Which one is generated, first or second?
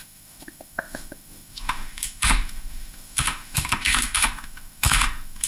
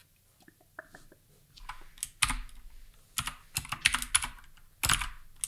first